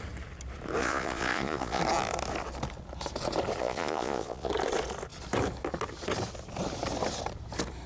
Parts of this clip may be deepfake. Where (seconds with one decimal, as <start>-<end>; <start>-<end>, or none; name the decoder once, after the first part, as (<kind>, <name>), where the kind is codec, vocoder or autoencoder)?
0.8-1.8 (vocoder, Vocos); 3.6-4.5